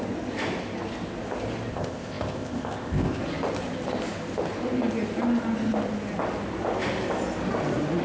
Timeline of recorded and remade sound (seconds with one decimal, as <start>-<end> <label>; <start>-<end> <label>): 0.0-1.7 recorded; 1.7-3.2 remade; 3.2-8.0 recorded